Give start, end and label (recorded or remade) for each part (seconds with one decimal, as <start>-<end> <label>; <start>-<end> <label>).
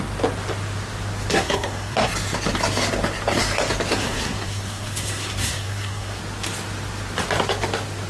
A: 0.0-1.3 recorded; 1.3-2.1 remade; 2.1-3.9 recorded; 3.9-6.2 remade; 6.2-8.1 recorded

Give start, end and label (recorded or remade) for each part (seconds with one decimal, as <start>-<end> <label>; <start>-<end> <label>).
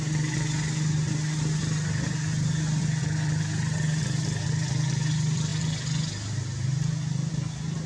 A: 0.0-7.9 recorded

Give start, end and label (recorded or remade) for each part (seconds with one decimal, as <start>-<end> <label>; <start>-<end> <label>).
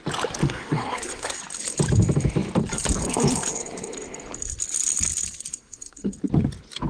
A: 0.0-0.4 recorded; 0.4-1.4 remade; 1.4-5.5 recorded; 5.5-6.1 remade; 6.1-6.9 recorded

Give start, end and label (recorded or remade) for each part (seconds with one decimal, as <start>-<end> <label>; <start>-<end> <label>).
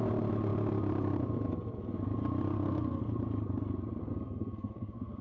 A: 0.0-2.5 recorded; 2.5-3.0 remade; 3.0-4.0 recorded; 4.0-5.2 remade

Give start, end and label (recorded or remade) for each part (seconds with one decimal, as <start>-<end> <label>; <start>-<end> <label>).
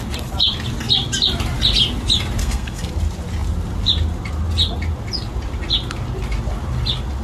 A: 0.0-2.4 recorded; 2.4-2.9 remade; 2.9-7.2 recorded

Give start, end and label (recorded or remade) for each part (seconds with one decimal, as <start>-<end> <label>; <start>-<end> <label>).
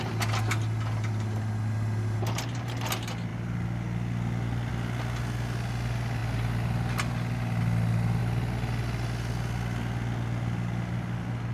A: 0.0-11.5 recorded